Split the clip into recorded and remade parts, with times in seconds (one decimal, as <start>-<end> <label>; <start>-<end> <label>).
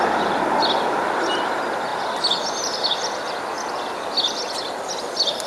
0.0-5.5 recorded